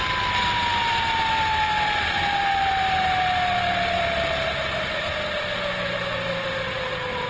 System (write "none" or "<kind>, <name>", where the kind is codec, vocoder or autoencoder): none